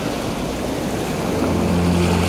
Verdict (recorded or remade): recorded